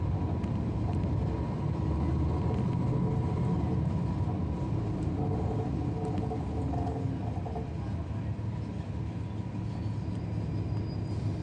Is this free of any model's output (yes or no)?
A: yes